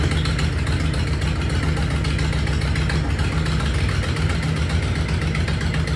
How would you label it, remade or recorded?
recorded